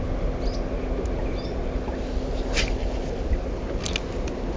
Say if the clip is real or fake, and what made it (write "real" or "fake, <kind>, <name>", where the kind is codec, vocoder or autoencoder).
real